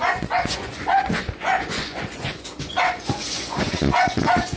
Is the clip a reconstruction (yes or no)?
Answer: yes